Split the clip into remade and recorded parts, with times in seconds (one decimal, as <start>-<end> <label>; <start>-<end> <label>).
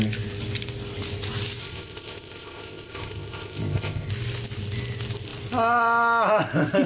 0.0-1.6 recorded; 1.6-4.1 remade; 4.1-6.9 recorded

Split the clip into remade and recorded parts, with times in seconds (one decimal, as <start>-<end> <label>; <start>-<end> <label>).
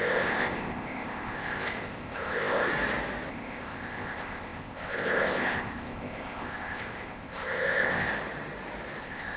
0.0-2.7 remade; 2.7-3.3 recorded; 3.3-8.1 remade; 8.1-9.0 recorded; 9.0-9.4 remade